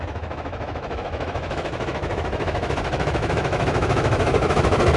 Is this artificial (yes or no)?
yes